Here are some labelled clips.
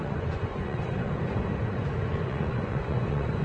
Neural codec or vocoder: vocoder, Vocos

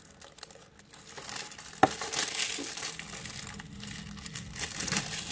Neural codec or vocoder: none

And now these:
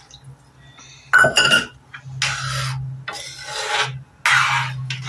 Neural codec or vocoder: none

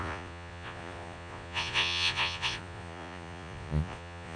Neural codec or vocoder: vocoder, Vocos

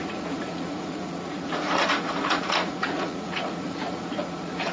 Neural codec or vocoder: vocoder, Vocos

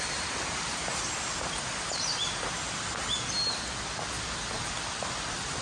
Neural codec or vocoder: none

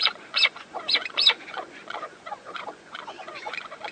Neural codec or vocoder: vocoder, Vocos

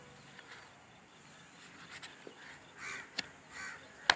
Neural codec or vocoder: none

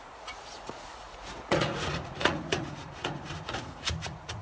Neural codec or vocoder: vocoder, Vocos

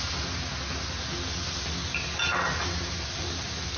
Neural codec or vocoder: none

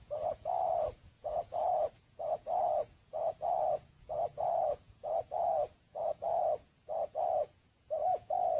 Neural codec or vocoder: vocoder, Vocos